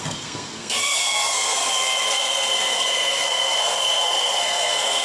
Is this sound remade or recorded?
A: remade